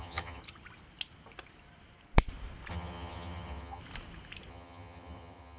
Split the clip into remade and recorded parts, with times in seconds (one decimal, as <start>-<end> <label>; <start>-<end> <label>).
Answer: 0.0-0.4 remade; 0.4-2.7 recorded; 2.7-3.8 remade; 3.8-4.5 recorded; 4.5-5.6 remade